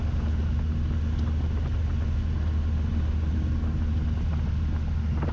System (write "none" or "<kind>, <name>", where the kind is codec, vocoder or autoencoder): none